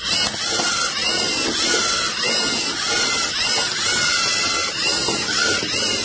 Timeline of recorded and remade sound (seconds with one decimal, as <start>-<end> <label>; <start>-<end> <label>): 0.0-6.0 recorded